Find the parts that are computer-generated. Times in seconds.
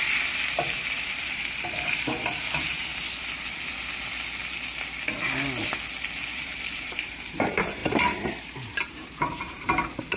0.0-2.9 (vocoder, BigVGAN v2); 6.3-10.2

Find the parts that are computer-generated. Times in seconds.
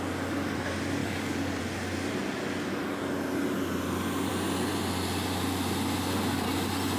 1.0-1.6 (codec, DAC)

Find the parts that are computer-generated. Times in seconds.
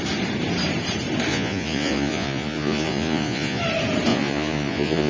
1.3-3.6 (vocoder, Vocos); 4.1-5.1